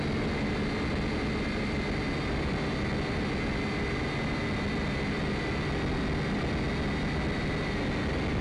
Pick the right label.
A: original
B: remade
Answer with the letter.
A